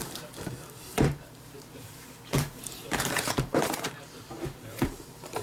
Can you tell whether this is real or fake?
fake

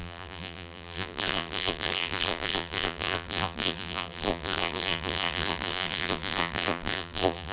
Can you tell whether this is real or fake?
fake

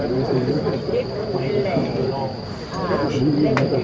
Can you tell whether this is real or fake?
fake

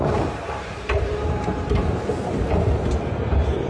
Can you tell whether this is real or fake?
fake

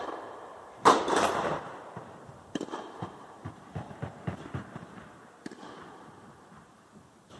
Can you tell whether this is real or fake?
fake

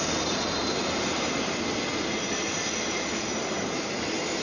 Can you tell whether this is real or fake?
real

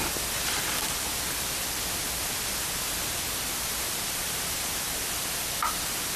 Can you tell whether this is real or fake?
real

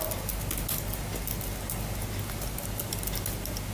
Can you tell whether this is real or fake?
real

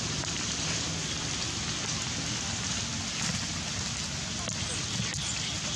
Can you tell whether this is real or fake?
real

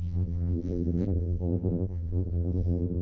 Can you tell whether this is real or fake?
fake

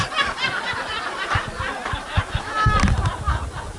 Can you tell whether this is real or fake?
real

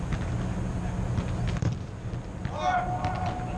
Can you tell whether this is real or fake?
real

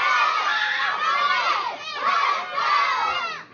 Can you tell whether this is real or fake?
real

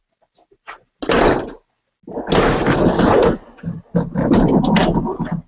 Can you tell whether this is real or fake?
real